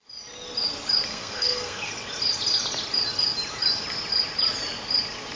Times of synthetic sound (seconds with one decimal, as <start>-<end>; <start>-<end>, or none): 1.1-1.9